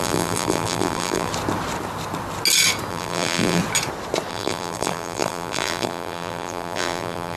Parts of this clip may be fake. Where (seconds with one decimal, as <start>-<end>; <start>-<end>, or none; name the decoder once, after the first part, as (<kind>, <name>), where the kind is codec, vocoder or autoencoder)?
0.0-1.3 (vocoder, BigVGAN v2); 2.9-3.6; 4.3-7.4